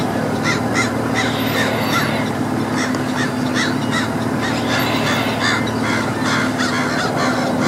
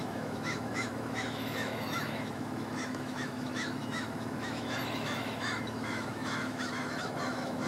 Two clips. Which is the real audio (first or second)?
first